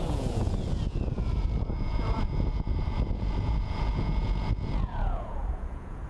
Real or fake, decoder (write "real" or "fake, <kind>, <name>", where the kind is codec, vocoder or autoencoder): fake, vocoder, Vocos